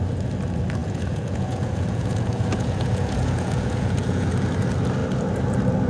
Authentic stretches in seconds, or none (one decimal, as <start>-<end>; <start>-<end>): 0.0-0.8; 4.3-5.9